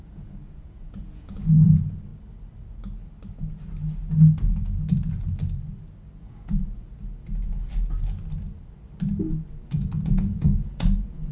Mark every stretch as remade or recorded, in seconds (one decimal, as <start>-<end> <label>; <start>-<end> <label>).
0.0-2.1 remade; 2.1-6.2 recorded; 6.2-6.9 remade; 6.9-9.3 recorded; 9.3-11.3 remade